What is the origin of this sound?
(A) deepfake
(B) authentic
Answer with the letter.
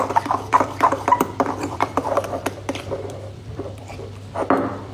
A